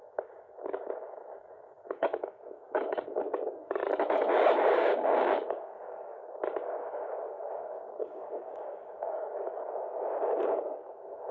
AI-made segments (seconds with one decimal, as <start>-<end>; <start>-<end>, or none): 0.0-3.8; 4.6-11.3